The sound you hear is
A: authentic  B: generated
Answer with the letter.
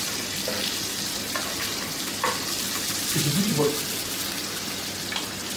A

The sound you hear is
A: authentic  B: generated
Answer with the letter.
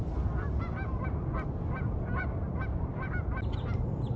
A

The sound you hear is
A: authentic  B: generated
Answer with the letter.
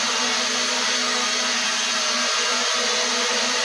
A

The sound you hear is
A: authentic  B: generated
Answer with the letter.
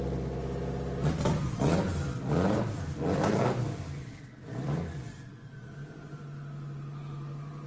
A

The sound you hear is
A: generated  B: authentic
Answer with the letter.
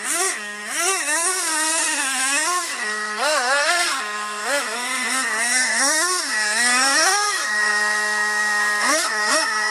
A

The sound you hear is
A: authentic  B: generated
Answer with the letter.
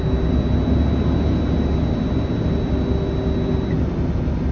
A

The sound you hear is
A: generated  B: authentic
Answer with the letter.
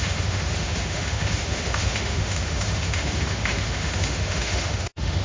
A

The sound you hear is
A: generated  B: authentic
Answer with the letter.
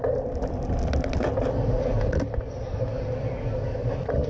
B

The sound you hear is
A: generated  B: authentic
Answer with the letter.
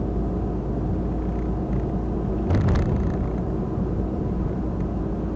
B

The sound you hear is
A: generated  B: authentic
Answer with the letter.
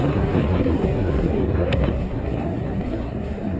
A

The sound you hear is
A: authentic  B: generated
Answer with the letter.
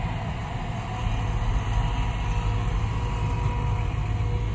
A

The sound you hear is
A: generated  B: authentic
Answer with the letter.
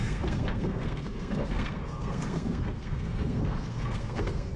A